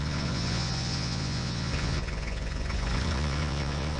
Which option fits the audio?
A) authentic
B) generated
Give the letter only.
B